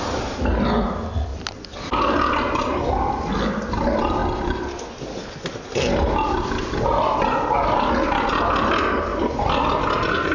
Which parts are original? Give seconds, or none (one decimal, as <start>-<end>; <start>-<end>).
0.0-10.3